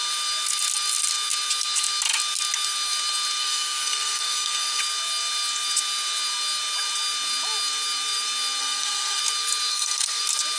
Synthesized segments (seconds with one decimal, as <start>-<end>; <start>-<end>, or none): 3.4-4.8; 8.6-9.2; 9.7-10.2